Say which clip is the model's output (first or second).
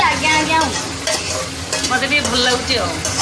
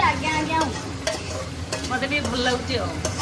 second